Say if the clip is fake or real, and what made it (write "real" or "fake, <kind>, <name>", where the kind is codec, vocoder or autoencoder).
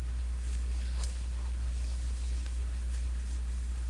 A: fake, codec, SNAC